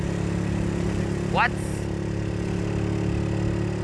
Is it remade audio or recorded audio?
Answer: recorded